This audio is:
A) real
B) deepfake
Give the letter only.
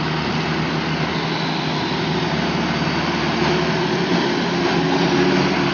A